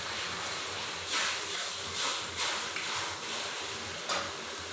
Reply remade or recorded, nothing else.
remade